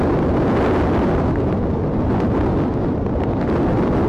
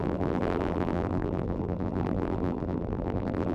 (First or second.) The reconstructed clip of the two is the second